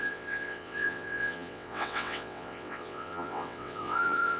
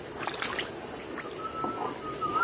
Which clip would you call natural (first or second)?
second